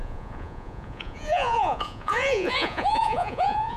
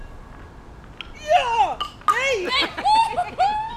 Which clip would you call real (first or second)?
second